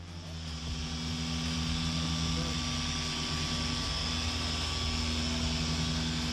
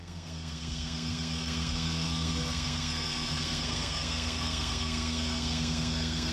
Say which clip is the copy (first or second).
second